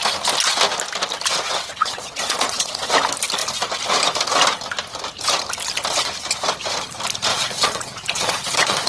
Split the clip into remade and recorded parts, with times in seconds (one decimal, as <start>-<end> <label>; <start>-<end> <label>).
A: 0.0-1.7 recorded; 1.7-2.9 remade; 2.9-7.3 recorded; 7.3-8.9 remade

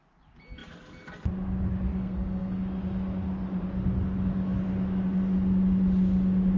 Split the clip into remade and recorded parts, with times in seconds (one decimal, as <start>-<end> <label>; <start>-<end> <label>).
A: 0.0-1.9 recorded; 1.9-2.6 remade; 2.6-6.6 recorded

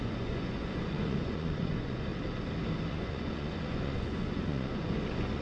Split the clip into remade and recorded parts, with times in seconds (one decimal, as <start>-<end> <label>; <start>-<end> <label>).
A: 0.0-2.1 remade; 2.1-2.9 recorded; 2.9-5.4 remade

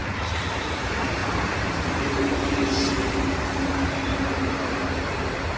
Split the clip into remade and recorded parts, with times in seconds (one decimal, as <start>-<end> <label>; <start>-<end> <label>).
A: 0.0-0.5 remade; 0.5-4.1 recorded; 4.1-5.0 remade; 5.0-5.6 recorded